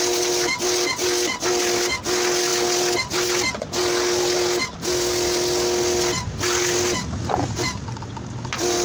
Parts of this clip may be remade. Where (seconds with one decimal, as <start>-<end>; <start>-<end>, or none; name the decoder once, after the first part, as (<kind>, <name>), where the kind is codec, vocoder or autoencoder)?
none